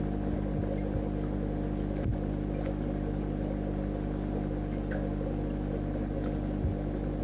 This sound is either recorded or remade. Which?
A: recorded